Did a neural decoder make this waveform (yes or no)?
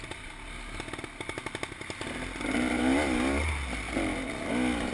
no